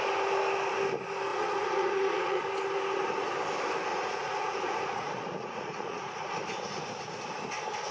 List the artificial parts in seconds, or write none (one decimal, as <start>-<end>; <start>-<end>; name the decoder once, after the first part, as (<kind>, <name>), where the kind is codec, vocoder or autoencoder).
1.3-2.4 (vocoder, Vocos); 3.9-6.3